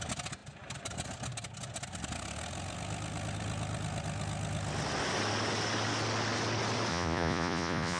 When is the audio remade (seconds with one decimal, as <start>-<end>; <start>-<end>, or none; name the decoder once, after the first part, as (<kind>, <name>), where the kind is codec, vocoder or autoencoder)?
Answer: 6.9-8.0 (vocoder, Vocos)

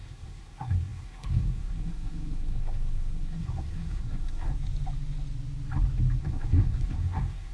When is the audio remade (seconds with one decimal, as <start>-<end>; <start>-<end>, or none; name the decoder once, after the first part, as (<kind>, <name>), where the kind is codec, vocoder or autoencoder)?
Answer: 0.0-4.5 (codec, SNAC); 6.2-7.5

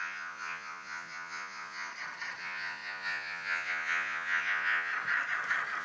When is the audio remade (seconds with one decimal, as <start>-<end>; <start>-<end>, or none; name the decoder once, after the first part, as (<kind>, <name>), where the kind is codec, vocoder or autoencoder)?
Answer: 0.0-1.9 (vocoder, Vocos); 2.4-4.9

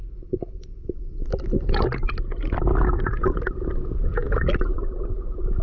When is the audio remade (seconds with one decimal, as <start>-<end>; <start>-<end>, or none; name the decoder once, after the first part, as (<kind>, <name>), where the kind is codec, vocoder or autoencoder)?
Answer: none

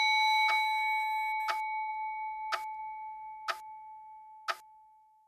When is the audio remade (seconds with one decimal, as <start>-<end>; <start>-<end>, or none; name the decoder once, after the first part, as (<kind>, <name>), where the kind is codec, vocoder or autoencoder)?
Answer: none

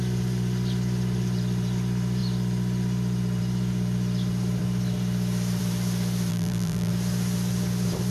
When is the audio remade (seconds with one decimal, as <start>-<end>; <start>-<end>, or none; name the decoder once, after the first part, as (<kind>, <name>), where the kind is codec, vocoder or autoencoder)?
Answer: 6.3-6.9 (vocoder, BigVGAN v2)

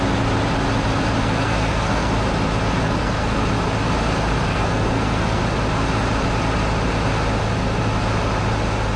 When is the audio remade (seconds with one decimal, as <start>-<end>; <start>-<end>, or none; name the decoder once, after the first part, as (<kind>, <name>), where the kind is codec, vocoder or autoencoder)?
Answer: 1.2-2.1 (codec, SNAC); 2.8-3.4; 4.5-5.4

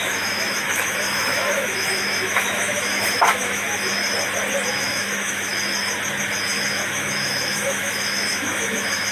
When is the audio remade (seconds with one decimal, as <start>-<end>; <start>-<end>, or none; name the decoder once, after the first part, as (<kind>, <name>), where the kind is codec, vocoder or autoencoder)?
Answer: 0.0-3.9 (autoencoder, DAC-VAE); 4.7-5.5; 6.5-9.1